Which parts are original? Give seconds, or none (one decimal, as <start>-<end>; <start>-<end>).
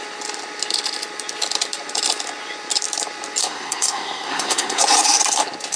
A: 0.0-3.4; 4.8-5.8